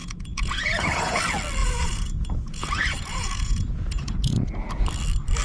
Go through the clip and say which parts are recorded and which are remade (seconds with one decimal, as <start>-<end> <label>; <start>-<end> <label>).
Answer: 0.0-1.2 remade; 1.2-1.6 recorded; 1.6-4.8 remade; 4.8-5.4 recorded